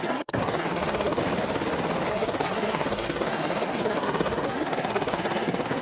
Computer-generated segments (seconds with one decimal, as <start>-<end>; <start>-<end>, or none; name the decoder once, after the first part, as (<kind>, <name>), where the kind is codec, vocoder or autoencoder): 0.0-1.2 (codec, SNAC); 2.1-5.8

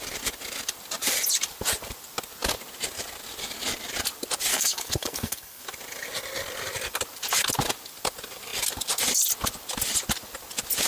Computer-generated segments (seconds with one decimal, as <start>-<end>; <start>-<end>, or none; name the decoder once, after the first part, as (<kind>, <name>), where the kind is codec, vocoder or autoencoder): 4.5-5.6 (codec, SNAC)